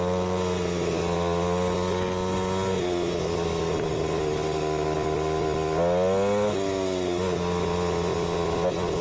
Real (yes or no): yes